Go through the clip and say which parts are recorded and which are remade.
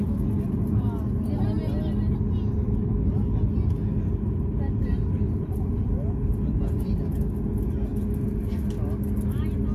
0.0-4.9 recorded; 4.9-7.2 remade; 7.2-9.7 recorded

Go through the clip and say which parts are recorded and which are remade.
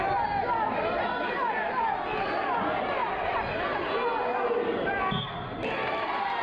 0.0-6.4 recorded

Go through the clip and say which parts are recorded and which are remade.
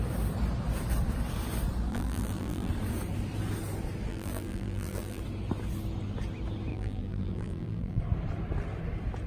0.0-1.9 recorded; 1.9-2.7 remade; 2.7-4.1 recorded; 4.1-5.2 remade; 5.2-6.7 recorded; 6.7-8.0 remade; 8.0-9.3 recorded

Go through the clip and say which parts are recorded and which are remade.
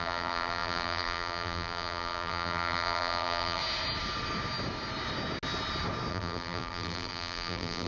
0.0-3.6 remade; 3.6-6.1 recorded; 6.1-7.9 remade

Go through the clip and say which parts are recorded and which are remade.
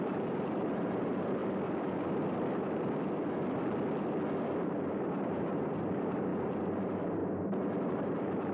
0.0-1.4 remade; 1.4-5.2 recorded; 5.2-7.2 remade; 7.2-7.9 recorded; 7.9-8.5 remade